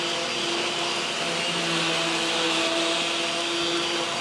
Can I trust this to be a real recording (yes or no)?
yes